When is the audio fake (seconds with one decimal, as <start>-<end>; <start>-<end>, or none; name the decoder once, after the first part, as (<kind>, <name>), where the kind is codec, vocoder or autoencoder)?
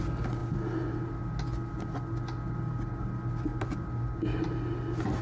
none